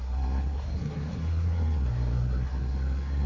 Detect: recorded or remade remade